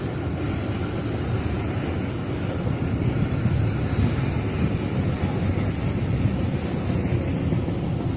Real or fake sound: real